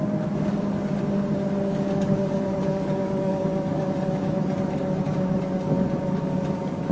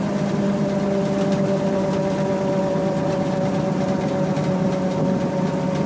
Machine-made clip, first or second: first